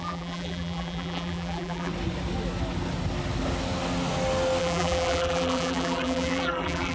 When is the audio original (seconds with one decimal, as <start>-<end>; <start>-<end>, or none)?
1.9-4.6